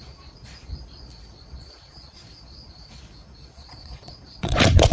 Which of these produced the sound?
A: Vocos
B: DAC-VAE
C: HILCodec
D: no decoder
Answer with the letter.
A